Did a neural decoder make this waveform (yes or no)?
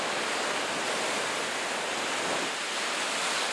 no